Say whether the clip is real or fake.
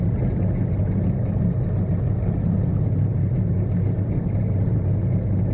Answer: real